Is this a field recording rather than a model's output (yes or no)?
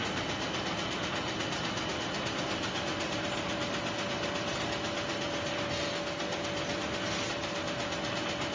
yes